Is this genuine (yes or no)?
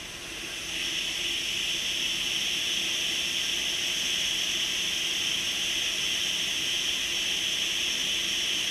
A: yes